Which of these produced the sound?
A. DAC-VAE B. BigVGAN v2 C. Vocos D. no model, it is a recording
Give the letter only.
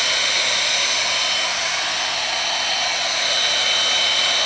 D